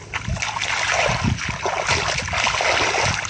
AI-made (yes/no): no